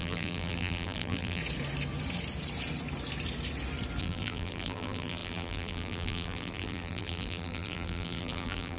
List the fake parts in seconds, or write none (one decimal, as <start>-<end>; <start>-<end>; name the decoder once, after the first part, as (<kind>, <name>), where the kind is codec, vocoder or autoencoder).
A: 0.0-1.4 (vocoder, BigVGAN v2); 4.0-8.8